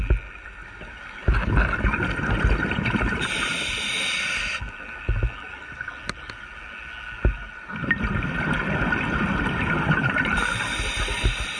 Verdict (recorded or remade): recorded